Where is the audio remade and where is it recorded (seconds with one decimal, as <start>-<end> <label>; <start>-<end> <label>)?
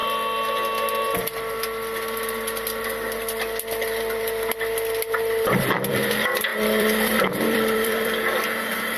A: 0.0-2.8 recorded; 2.8-9.0 remade